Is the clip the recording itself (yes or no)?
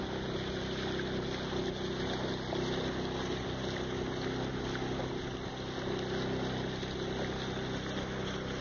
yes